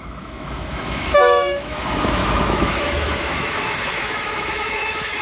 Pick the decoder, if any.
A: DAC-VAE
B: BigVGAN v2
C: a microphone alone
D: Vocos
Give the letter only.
A